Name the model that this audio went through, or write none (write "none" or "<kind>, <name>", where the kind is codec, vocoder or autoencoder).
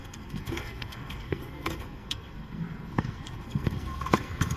codec, SNAC